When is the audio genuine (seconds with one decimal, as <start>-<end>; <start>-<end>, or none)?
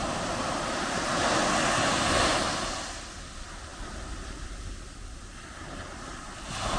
0.0-6.8